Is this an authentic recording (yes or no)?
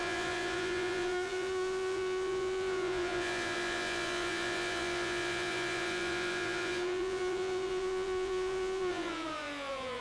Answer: no